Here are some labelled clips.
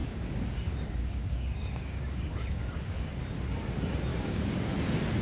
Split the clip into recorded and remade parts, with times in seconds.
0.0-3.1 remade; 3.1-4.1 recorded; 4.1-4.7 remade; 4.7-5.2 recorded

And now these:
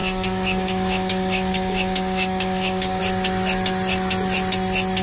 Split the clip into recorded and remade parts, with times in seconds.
0.0-3.0 remade; 3.0-5.0 recorded

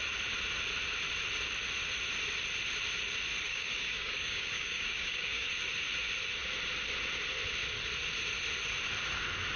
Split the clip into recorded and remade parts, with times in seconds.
0.0-3.5 recorded; 3.5-5.5 remade; 5.5-9.6 recorded

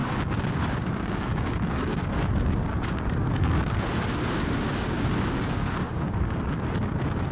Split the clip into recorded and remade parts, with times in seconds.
0.0-2.0 remade; 2.0-2.7 recorded; 2.7-6.4 remade; 6.4-7.3 recorded

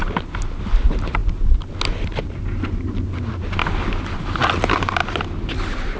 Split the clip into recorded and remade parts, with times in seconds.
0.0-6.0 recorded